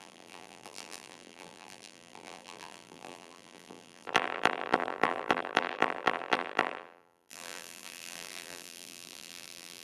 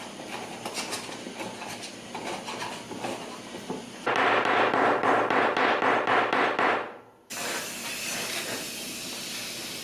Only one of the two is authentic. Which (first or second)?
second